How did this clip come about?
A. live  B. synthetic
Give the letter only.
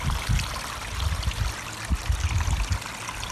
A